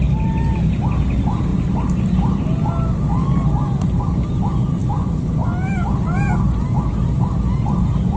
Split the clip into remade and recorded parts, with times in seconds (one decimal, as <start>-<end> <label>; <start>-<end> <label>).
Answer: 0.0-8.2 recorded